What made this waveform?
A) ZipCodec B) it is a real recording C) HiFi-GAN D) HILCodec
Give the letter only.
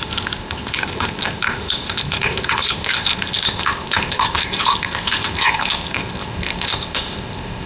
A